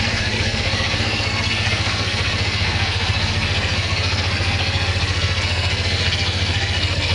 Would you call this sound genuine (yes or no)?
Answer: no